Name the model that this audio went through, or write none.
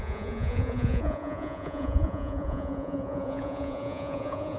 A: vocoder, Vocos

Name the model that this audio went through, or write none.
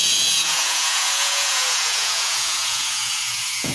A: vocoder, Vocos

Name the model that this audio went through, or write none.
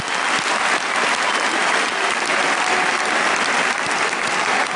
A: none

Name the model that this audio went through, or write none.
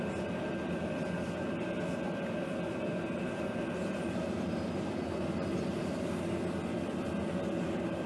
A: none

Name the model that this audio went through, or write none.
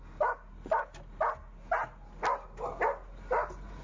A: none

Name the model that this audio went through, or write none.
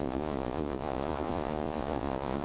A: vocoder, Vocos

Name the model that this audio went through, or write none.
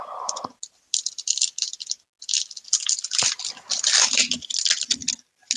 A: none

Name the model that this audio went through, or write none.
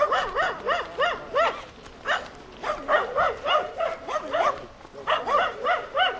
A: none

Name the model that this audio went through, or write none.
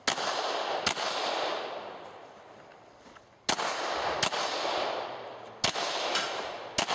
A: none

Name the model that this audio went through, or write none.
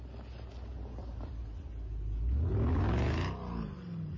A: none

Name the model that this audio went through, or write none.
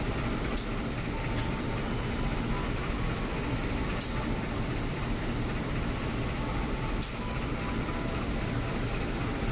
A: none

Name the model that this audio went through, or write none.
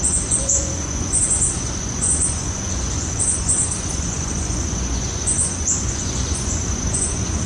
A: vocoder, Vocos